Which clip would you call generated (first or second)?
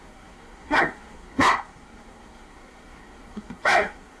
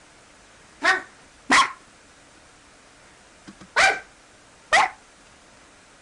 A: first